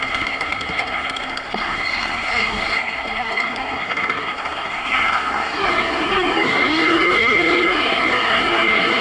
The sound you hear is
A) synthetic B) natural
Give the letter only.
A